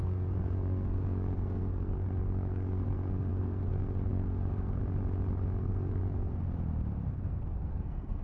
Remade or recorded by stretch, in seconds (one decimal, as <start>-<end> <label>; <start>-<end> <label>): 0.0-4.8 remade; 4.8-5.6 recorded; 5.6-6.0 remade; 6.0-7.1 recorded; 7.1-8.2 remade